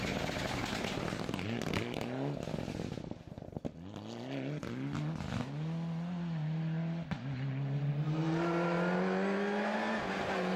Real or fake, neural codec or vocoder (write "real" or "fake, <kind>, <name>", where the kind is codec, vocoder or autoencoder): real